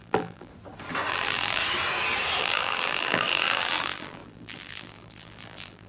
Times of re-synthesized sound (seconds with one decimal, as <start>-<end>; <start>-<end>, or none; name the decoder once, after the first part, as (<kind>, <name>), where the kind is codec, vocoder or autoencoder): 0.0-0.5 (vocoder, BigVGAN v2); 1.1-1.6; 2.4-5.9